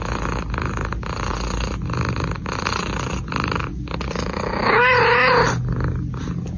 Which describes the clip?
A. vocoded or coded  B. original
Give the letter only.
B